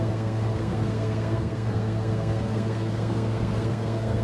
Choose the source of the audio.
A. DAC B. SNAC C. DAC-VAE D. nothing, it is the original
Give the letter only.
B